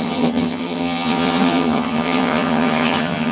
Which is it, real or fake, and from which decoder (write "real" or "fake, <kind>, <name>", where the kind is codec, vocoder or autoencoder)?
fake, vocoder, HiFi-GAN